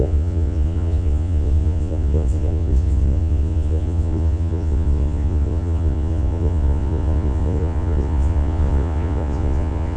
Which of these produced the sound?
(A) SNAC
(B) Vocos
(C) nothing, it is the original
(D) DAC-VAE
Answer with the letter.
B